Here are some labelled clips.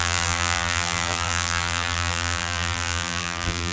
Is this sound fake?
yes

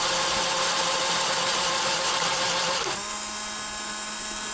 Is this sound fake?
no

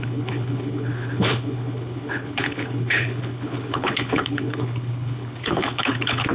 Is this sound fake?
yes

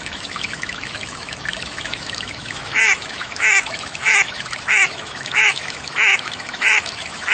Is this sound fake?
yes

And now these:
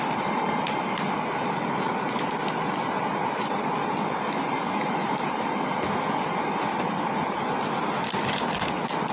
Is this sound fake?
no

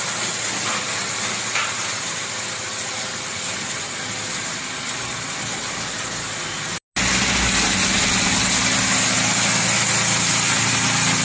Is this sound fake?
no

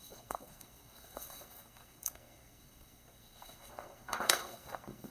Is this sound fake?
yes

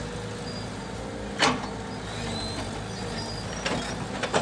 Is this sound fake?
no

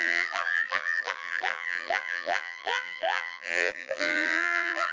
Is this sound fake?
yes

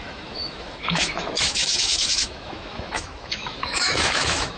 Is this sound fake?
yes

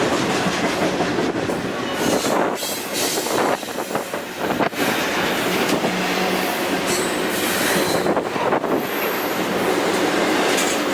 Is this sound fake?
no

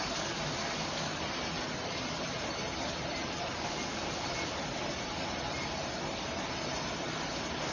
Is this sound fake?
no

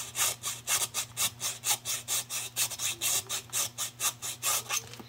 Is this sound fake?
no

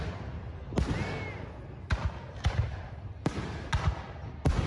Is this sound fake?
no